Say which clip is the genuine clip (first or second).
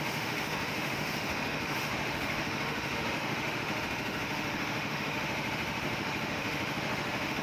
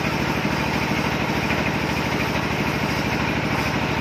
second